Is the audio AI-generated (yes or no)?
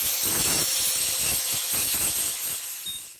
yes